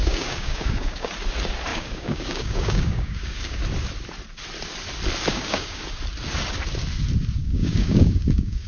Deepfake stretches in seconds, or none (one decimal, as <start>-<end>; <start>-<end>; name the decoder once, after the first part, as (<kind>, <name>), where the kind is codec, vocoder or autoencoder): 0.0-1.1 (codec, DAC); 1.7-3.6; 5.3-5.8; 7.4-8.7